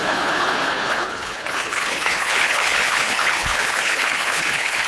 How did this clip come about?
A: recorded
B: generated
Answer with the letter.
B